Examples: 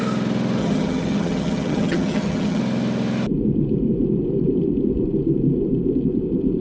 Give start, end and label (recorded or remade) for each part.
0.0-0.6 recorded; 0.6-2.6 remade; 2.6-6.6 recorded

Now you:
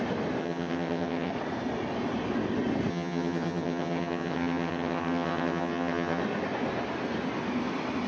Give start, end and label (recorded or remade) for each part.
0.0-0.4 recorded; 0.4-1.3 remade; 1.3-2.9 recorded; 2.9-6.2 remade; 6.2-8.1 recorded

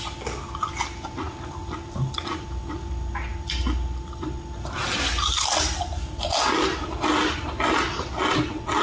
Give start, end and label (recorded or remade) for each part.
0.0-8.8 recorded

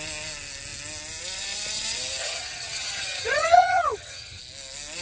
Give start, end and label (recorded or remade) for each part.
0.0-2.2 recorded; 2.2-4.4 remade; 4.4-5.0 recorded

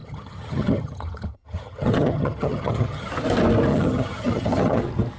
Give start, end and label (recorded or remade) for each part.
0.0-3.1 remade; 3.1-3.7 recorded; 3.7-4.8 remade; 4.8-5.2 recorded

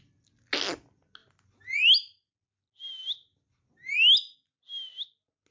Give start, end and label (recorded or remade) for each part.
0.0-5.5 recorded

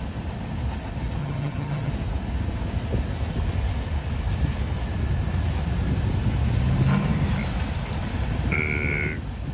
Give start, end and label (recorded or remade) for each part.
0.0-1.2 recorded; 1.2-1.9 remade; 1.9-9.5 recorded

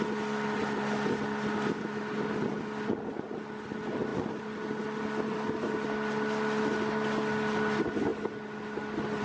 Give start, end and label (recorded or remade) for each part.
0.0-9.2 recorded